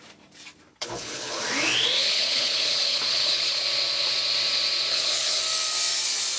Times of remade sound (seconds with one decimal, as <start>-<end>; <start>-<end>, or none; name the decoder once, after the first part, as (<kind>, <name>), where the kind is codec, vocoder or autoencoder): 0.7-1.4 (codec, HILCodec); 2.0-3.6; 4.9-5.4